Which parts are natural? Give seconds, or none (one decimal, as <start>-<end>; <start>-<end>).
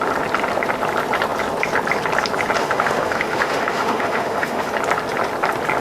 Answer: 0.0-2.6; 4.7-5.8